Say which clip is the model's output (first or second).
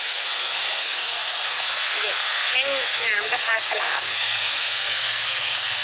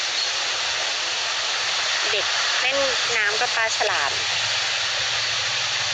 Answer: first